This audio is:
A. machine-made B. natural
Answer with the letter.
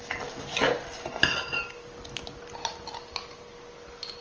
B